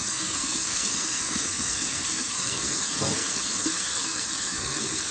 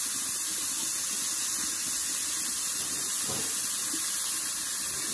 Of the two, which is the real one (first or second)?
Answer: second